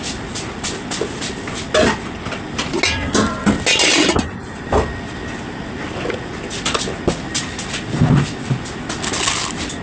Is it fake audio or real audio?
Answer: real